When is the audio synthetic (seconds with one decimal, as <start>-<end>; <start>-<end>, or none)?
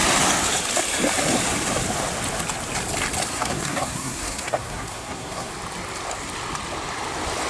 3.3-5.5